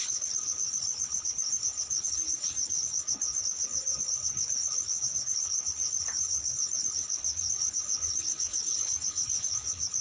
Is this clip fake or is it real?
fake